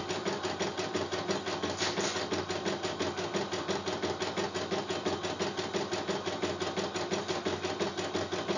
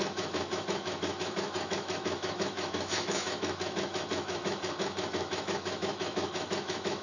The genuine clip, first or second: first